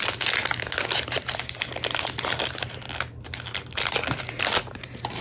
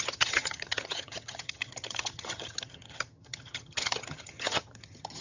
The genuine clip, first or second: first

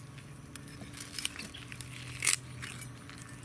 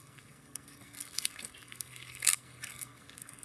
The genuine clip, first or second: first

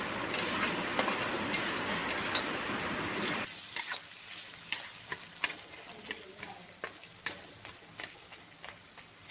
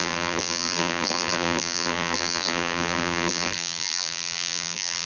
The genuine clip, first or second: first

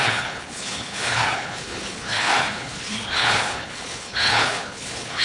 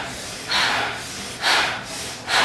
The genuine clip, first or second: second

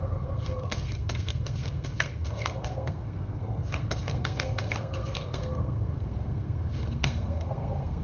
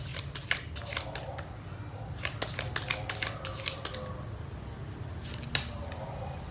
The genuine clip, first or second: second